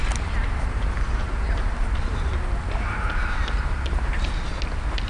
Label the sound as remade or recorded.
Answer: recorded